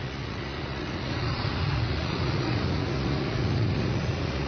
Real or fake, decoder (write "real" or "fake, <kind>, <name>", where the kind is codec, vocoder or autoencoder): fake, vocoder, Vocos